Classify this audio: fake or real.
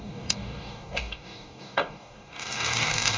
fake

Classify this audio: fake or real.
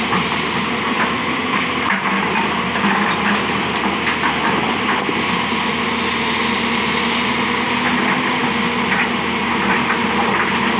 real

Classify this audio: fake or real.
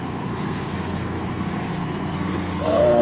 fake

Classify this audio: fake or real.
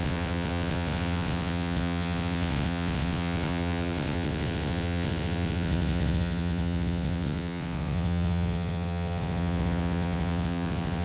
fake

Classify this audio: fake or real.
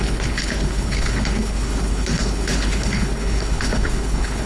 fake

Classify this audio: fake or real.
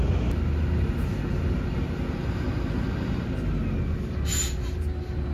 real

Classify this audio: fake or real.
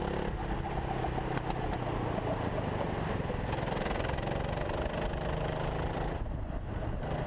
real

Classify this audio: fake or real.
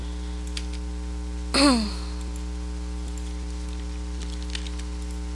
real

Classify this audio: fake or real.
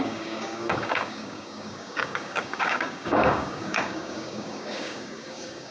fake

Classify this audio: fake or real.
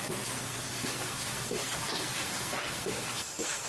fake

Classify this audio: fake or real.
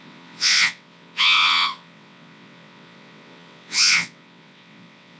fake